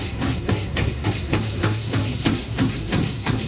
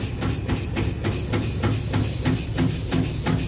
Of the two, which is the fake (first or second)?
first